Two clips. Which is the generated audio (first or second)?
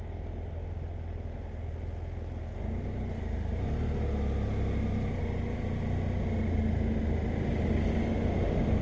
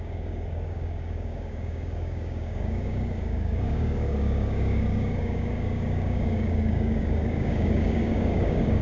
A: second